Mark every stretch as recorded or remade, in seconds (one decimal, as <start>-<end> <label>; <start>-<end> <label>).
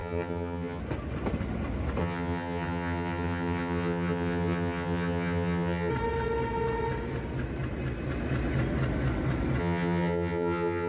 0.0-0.8 remade; 0.8-2.0 recorded; 2.0-5.9 remade; 5.9-9.6 recorded; 9.6-10.9 remade